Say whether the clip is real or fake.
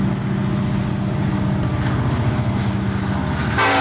real